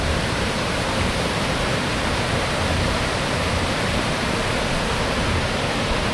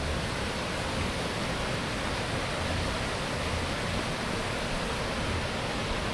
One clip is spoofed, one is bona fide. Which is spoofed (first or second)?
first